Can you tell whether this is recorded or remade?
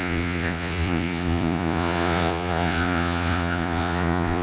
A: remade